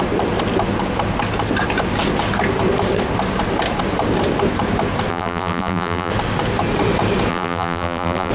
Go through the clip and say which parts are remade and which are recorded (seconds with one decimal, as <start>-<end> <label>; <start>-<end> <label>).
0.0-5.1 recorded; 5.1-6.1 remade; 6.1-7.3 recorded; 7.3-8.3 remade